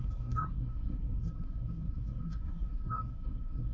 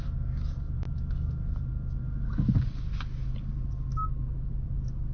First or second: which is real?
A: second